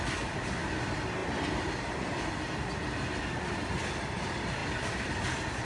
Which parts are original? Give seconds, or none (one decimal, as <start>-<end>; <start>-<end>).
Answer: 0.0-5.6